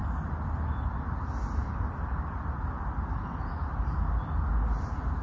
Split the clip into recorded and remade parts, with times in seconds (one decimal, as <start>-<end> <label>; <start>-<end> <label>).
0.0-5.2 recorded